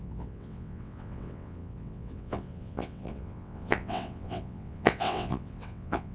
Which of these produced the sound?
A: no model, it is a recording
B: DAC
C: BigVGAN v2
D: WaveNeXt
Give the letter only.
D